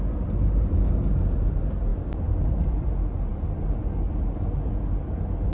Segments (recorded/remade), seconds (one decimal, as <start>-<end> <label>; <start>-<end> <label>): 0.0-5.5 recorded